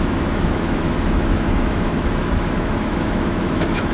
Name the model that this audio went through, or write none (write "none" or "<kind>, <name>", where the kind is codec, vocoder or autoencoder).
autoencoder, DAC-VAE